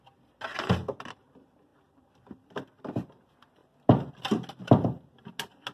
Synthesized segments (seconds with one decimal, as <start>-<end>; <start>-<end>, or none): none